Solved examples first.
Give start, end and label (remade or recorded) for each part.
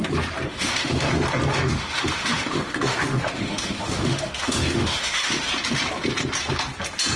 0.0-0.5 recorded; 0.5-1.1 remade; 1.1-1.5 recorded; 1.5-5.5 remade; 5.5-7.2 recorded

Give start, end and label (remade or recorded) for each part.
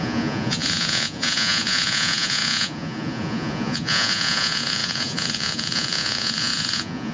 0.0-7.1 remade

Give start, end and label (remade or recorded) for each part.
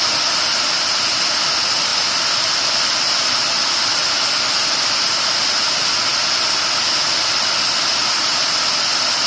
0.0-9.3 recorded